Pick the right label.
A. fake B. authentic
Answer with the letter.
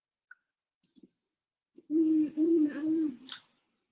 A